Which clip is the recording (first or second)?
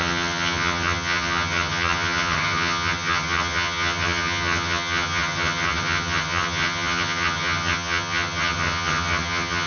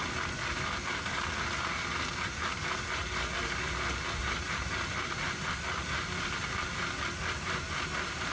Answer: second